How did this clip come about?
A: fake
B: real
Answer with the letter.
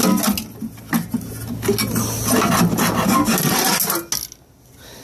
B